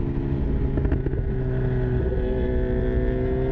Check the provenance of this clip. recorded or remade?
recorded